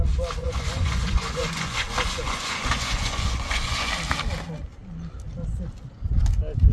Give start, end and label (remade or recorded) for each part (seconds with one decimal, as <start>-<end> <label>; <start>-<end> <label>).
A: 0.0-0.4 recorded; 0.4-3.9 remade; 3.9-6.7 recorded